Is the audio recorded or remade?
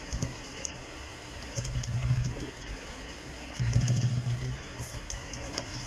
remade